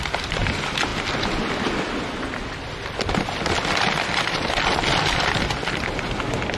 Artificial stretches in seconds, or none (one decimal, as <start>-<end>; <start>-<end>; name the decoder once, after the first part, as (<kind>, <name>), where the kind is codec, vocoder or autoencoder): none